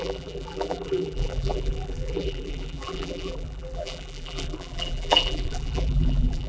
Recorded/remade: remade